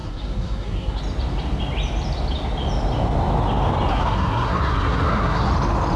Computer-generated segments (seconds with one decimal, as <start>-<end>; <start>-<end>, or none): 0.0-1.0; 3.9-5.5